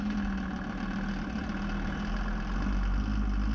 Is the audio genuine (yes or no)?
yes